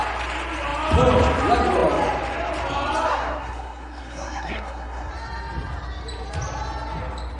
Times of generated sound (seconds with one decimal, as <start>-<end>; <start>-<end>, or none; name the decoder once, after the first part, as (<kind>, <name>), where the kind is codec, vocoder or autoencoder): 3.1-5.1 (codec, SNAC)